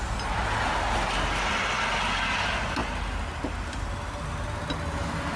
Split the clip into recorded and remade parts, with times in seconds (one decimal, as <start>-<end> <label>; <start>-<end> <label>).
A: 0.0-5.4 recorded